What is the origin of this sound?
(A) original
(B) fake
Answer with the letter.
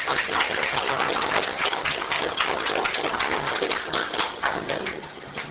B